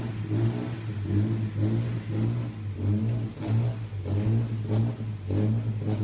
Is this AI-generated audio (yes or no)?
no